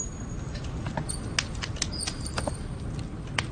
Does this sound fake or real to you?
real